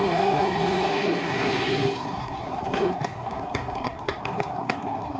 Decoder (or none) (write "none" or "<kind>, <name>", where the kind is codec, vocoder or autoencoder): codec, SNAC